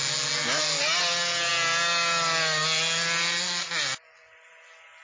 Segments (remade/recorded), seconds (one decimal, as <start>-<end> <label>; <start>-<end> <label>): 0.0-5.0 recorded